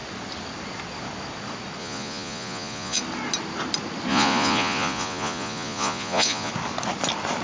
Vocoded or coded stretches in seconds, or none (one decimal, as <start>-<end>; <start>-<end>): 1.8-3.0; 4.1-6.5